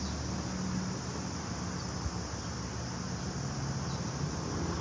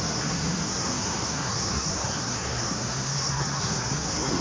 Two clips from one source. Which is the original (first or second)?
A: first